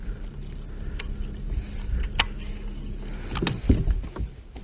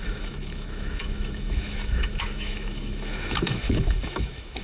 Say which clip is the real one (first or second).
first